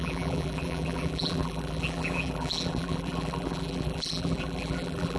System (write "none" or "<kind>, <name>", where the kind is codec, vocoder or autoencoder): vocoder, BigVGAN v2